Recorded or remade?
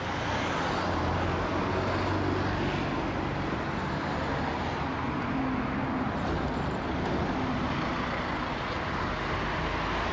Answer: recorded